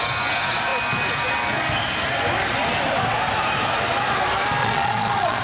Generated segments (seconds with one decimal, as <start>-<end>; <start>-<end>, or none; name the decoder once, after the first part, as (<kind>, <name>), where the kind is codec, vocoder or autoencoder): 4.6-5.4 (vocoder, Vocos)